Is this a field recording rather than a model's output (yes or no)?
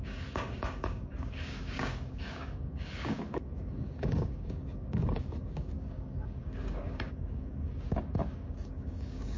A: no